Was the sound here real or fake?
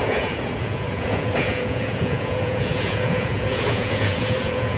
fake